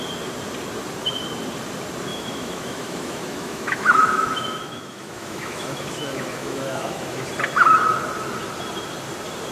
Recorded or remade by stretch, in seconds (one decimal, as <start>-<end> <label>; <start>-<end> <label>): 0.0-2.1 recorded; 2.1-7.2 remade; 7.2-9.5 recorded